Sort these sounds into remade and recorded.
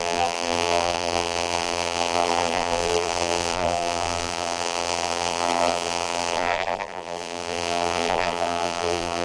remade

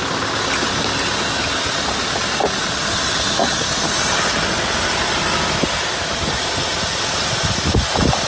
recorded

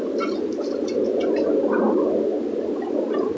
recorded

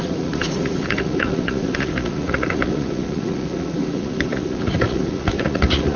remade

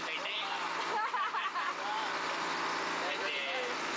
recorded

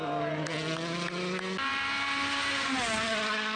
recorded